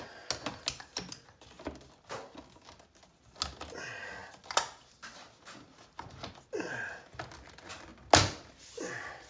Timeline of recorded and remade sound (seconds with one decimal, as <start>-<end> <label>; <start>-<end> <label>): 0.0-9.3 recorded